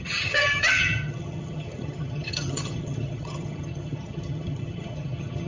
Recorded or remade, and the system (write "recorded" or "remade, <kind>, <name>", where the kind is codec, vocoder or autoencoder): remade, vocoder, HiFi-GAN